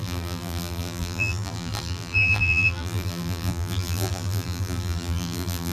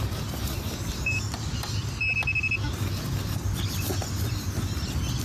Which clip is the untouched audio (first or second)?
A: second